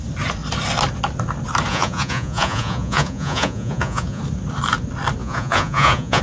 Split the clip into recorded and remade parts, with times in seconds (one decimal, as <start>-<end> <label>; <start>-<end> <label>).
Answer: 0.0-1.7 recorded; 1.7-4.2 remade; 4.2-5.2 recorded; 5.2-6.2 remade